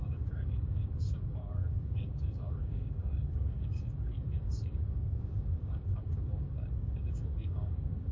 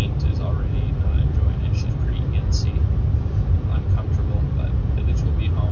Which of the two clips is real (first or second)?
second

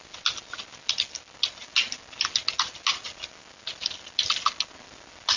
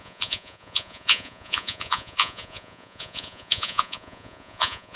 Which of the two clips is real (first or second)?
first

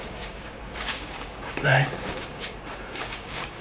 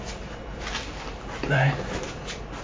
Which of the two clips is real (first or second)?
second